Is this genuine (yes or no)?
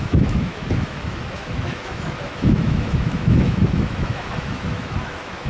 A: no